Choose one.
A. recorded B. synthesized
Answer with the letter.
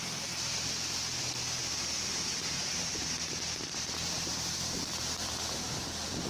B